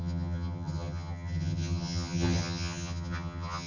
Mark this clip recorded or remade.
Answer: remade